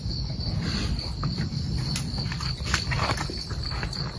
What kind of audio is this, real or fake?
real